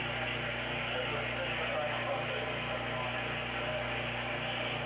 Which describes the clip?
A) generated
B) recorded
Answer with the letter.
B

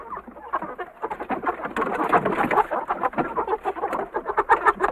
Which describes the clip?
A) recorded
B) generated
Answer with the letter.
A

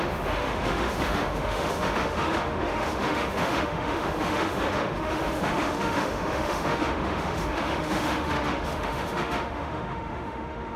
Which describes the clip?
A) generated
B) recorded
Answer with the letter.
A